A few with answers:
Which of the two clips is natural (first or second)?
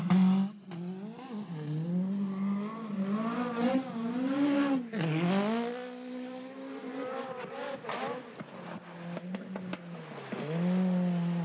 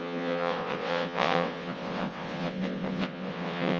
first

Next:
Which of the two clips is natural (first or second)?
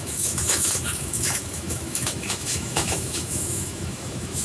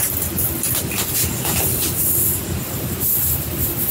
second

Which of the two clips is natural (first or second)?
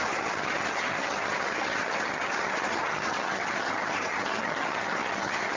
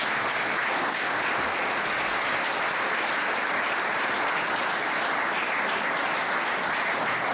second